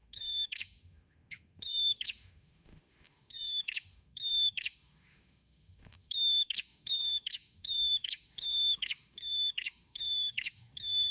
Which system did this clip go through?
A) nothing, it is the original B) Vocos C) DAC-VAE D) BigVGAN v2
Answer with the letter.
C